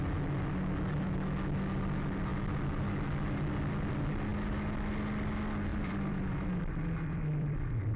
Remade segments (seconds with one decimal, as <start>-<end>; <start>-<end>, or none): 5.7-8.0